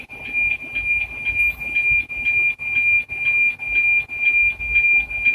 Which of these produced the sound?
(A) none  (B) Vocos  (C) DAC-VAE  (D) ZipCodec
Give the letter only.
A